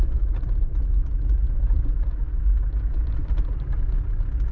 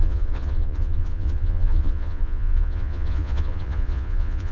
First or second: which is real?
first